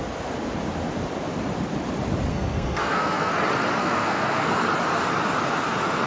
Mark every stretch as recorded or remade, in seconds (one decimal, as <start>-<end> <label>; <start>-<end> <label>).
0.0-2.3 recorded; 2.3-3.3 remade; 3.3-3.8 recorded; 3.8-4.5 remade; 4.5-6.1 recorded